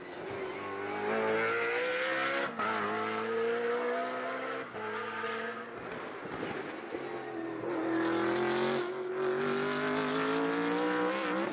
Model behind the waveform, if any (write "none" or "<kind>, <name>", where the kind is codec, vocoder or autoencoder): none